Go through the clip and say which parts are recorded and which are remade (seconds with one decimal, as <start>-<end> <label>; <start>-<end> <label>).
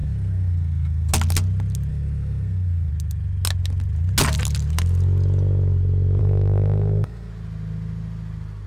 0.0-1.1 remade; 1.1-1.9 recorded; 1.9-2.9 remade; 2.9-6.2 recorded; 6.2-7.3 remade; 7.3-8.7 recorded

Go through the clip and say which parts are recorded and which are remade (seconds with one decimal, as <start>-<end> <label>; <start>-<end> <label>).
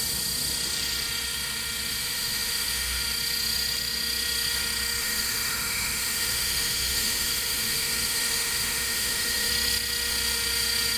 0.0-2.0 recorded; 2.0-3.0 remade; 3.0-5.0 recorded; 5.0-9.5 remade; 9.5-11.0 recorded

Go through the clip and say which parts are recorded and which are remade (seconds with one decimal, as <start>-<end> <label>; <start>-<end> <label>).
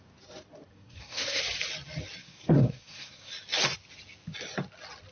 0.0-0.7 recorded; 0.7-1.4 remade; 1.4-2.2 recorded; 2.2-3.3 remade; 3.3-5.1 recorded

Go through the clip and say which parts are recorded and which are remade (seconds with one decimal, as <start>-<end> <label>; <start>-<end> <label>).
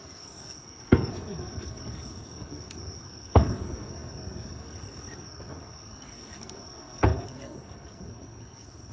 0.0-8.9 remade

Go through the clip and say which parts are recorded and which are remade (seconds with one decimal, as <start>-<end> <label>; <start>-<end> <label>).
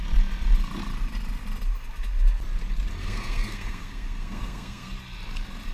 0.0-3.0 recorded; 3.0-4.9 remade; 4.9-5.7 recorded